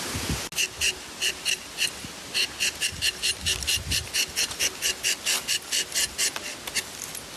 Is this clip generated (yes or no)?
no